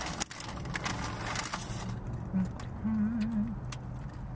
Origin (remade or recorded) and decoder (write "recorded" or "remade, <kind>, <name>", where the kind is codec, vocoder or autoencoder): recorded